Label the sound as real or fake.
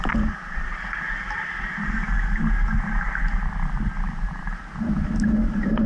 real